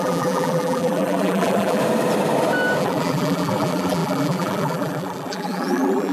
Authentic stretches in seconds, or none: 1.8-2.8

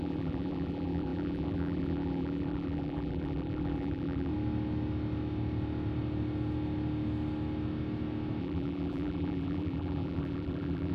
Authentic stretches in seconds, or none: 4.3-8.4

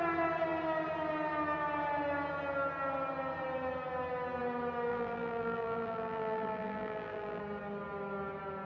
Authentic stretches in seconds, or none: 0.0-4.9; 7.4-8.7

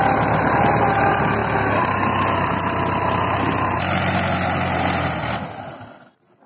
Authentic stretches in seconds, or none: 0.0-6.5